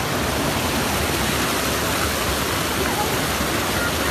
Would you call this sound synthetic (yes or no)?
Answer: no